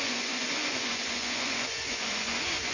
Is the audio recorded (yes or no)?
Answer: no